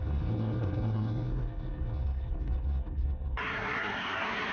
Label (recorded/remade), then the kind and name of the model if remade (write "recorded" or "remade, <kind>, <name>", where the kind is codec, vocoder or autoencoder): remade, codec, SNAC